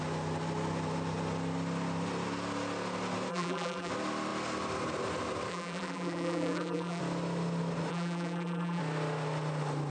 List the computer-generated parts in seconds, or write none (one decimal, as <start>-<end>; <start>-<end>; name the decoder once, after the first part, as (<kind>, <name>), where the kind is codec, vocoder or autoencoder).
3.3-3.9 (vocoder, BigVGAN v2); 5.5-7.0; 7.9-8.8